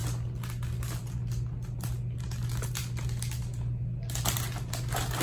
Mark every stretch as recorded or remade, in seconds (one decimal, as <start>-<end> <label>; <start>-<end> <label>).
0.0-5.2 recorded